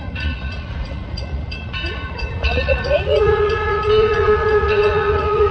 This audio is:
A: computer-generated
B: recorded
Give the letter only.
A